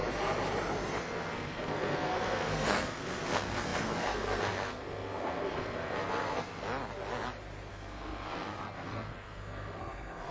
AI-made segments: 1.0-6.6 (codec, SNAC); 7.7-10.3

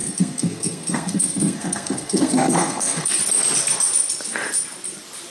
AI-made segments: 0.0-3.2 (codec, SNAC)

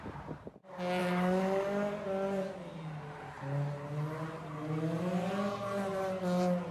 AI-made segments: none

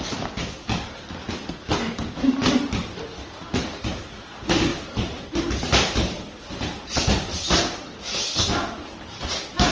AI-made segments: none

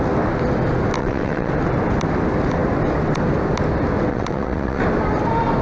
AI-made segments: 1.0-1.5 (vocoder, WaveNeXt); 4.1-4.8

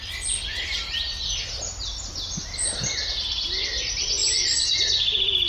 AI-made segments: 4.2-4.8 (vocoder, BigVGAN v2)

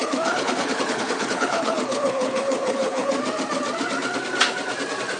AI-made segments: 0.0-3.1 (codec, HILCodec)